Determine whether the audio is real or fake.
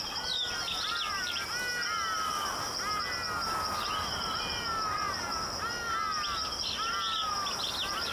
real